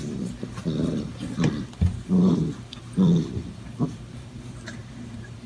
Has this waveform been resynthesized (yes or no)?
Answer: yes